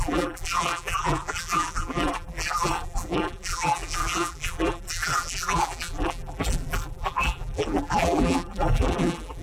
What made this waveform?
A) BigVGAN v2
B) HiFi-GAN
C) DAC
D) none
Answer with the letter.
A